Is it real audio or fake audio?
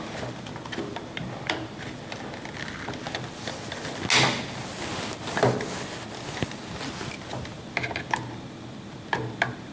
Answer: real